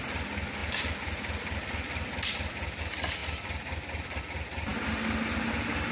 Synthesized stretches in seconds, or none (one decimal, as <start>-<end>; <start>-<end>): 0.6-2.8; 3.2-4.2